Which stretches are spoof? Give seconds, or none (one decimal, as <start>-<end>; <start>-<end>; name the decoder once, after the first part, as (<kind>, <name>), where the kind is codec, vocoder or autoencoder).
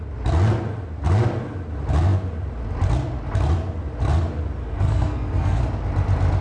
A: 4.6-5.6 (codec, SNAC)